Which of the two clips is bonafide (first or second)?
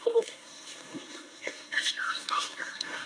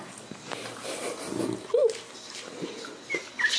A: second